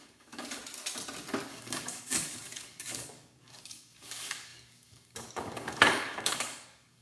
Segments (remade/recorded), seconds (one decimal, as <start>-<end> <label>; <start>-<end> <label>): 0.0-0.6 remade; 0.6-1.5 recorded; 1.5-7.0 remade